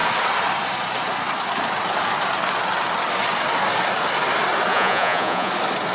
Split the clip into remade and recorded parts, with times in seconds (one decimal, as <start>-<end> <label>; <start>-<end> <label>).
0.0-4.7 recorded; 4.7-5.5 remade; 5.5-5.9 recorded